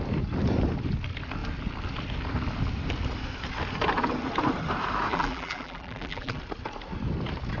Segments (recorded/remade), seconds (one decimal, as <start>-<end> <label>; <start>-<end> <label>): 0.0-5.1 recorded; 5.1-6.4 remade; 6.4-7.6 recorded